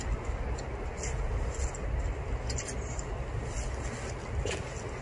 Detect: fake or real real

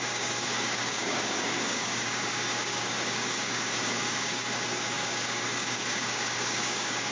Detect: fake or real fake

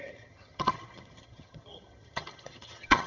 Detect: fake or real fake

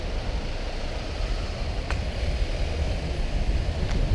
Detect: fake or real real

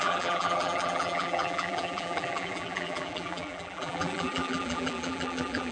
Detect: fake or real fake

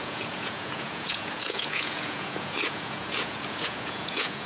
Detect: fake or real fake